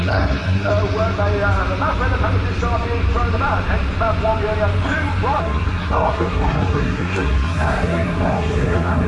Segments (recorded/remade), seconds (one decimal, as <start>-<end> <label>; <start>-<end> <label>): 0.0-0.7 remade; 0.7-5.4 recorded; 5.4-9.1 remade